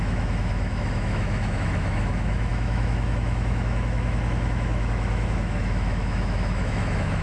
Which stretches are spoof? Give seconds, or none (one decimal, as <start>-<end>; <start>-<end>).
0.0-7.2